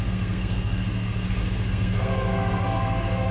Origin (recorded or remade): remade